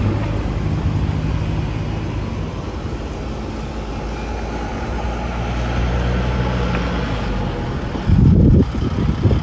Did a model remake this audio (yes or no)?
no